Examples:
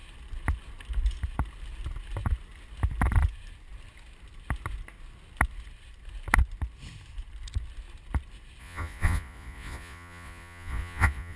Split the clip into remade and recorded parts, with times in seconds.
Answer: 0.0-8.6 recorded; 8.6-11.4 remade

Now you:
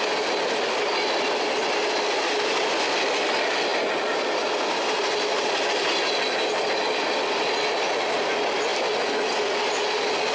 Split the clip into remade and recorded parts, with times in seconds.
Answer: 0.0-10.3 recorded